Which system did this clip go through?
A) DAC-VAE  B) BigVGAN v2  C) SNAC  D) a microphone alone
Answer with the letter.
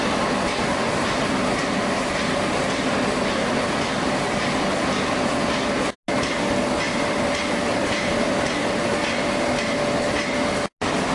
D